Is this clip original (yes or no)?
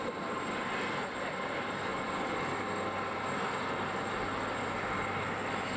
yes